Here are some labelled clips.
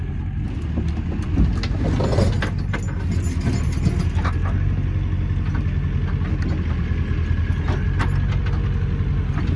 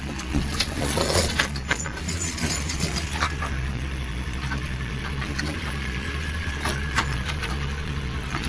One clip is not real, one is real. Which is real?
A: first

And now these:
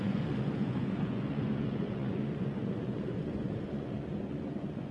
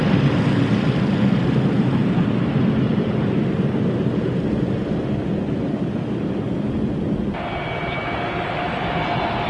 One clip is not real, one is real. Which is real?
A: second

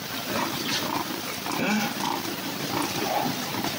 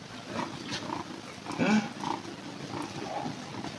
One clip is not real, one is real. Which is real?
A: second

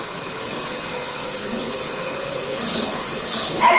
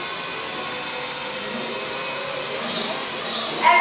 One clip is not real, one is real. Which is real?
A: second